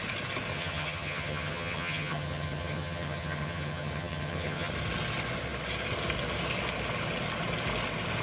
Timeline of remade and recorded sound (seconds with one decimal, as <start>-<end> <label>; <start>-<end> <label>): 0.0-0.5 recorded; 0.5-4.7 remade; 4.7-8.2 recorded